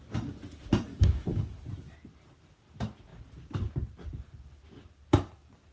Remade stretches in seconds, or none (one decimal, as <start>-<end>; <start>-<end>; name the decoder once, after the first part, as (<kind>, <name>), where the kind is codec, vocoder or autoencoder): 0.9-1.5 (autoencoder, DAC-VAE)